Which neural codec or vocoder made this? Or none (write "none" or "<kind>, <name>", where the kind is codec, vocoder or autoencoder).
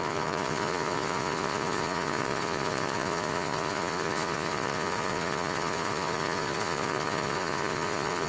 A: vocoder, Vocos